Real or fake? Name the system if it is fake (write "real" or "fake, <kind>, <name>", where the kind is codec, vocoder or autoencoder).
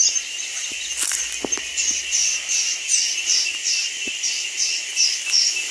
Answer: real